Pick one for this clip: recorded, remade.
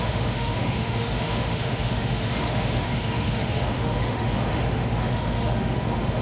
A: remade